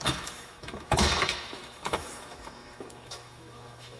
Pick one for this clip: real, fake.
fake